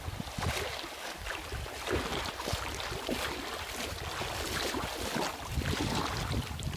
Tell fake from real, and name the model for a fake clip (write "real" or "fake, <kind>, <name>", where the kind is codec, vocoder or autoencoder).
real